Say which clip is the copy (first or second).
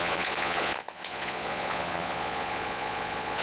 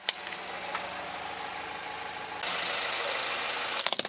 first